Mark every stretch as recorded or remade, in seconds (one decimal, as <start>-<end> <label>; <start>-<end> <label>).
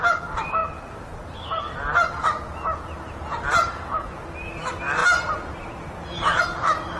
0.0-7.0 recorded